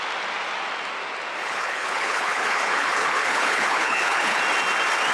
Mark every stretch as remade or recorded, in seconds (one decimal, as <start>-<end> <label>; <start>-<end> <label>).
0.0-1.4 recorded; 1.4-4.4 remade; 4.4-5.1 recorded